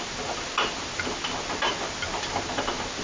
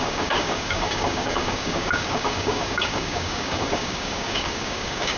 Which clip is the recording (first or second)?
first